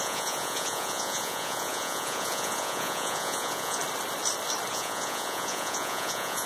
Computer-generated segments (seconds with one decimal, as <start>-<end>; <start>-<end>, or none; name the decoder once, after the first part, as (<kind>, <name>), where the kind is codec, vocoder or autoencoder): 0.0-3.8 (vocoder, Vocos); 4.7-6.5